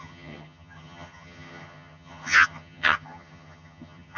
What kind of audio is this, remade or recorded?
remade